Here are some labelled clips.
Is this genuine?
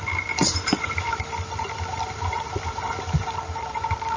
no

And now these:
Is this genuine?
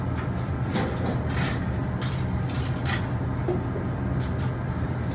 yes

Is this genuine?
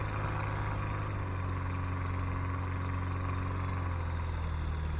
yes